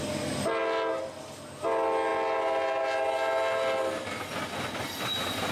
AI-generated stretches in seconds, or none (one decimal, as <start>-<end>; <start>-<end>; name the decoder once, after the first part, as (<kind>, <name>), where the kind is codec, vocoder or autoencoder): none